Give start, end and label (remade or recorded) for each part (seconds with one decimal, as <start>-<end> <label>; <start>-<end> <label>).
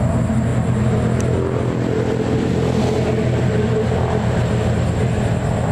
0.0-5.7 recorded